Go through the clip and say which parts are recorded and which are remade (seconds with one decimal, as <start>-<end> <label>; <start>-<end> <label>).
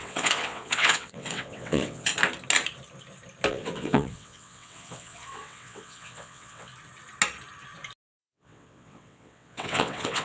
0.0-2.1 remade; 2.1-3.5 recorded; 3.5-6.7 remade; 6.7-8.2 recorded; 8.2-10.2 remade